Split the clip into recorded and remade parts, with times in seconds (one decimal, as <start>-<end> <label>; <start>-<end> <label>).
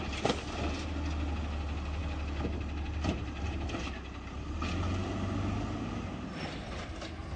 0.0-7.4 recorded